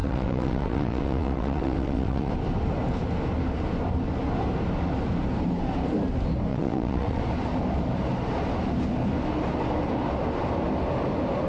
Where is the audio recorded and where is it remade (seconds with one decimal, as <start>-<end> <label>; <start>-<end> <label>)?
0.0-2.3 remade; 2.3-6.5 recorded; 6.5-7.2 remade; 7.2-11.5 recorded